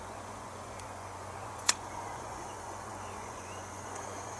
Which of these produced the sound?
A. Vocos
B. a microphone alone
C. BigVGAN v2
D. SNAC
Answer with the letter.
A